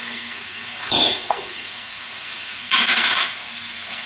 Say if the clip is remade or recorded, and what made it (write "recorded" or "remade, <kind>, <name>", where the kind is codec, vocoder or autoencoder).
remade, codec, SNAC